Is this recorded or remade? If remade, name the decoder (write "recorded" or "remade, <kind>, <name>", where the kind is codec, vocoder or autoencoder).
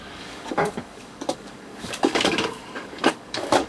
remade, codec, DAC